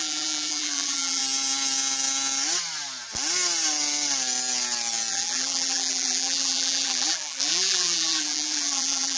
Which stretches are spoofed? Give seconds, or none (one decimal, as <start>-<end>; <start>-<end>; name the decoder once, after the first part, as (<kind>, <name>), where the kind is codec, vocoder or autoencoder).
0.0-1.2 (vocoder, BigVGAN v2); 5.1-9.2